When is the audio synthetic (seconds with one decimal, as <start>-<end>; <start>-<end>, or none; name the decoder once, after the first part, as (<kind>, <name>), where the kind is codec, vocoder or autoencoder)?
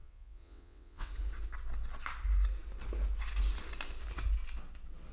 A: 0.0-1.1 (vocoder, WaveNeXt)